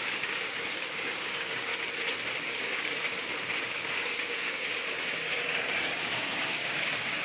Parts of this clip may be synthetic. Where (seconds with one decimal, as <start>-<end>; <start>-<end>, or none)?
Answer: 0.0-1.7; 2.4-3.0; 3.6-7.2